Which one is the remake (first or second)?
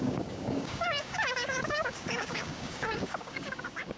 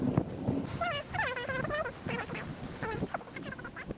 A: first